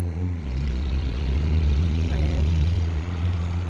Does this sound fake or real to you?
fake